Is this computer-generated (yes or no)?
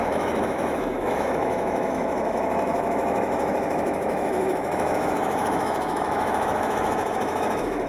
yes